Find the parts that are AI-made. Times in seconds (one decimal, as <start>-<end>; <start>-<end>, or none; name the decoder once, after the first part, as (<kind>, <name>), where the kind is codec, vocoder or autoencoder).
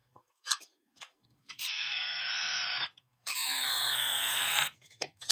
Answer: 0.0-2.2 (codec, SNAC); 3.0-5.3